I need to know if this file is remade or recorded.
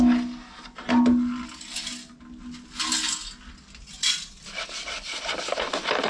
recorded